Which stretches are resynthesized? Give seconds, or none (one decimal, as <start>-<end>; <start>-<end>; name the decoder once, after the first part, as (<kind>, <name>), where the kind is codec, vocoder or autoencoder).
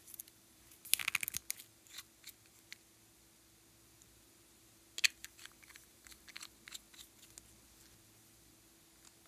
0.0-0.8 (vocoder, BigVGAN v2); 5.2-6.3